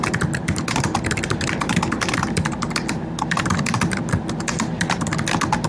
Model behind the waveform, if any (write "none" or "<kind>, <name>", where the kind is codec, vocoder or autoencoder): vocoder, BigVGAN v2